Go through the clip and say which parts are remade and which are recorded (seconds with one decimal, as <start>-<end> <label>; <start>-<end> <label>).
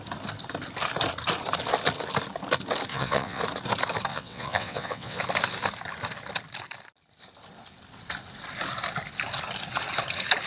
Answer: 0.0-2.9 recorded; 2.9-3.4 remade; 3.4-4.1 recorded; 4.1-5.2 remade; 5.2-10.5 recorded